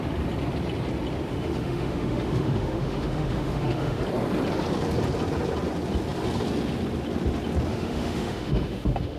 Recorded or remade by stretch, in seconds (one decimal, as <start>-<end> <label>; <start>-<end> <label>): 0.0-1.3 recorded; 1.3-4.0 remade; 4.0-7.7 recorded; 7.7-9.2 remade